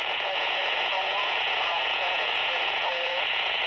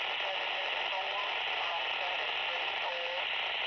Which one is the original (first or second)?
second